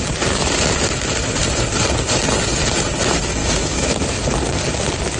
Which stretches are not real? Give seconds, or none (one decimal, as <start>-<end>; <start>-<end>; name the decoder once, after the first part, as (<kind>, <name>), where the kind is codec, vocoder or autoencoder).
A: 3.4-4.2 (autoencoder, DAC-VAE)